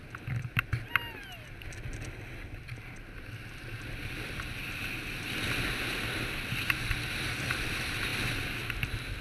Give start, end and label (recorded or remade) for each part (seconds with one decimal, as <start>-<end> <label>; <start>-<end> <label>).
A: 0.0-9.2 recorded